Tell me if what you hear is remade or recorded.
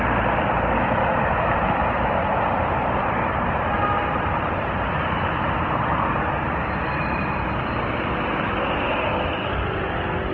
recorded